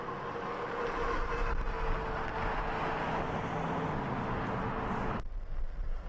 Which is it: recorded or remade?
recorded